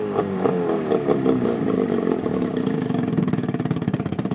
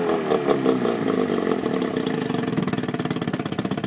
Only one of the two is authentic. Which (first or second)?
second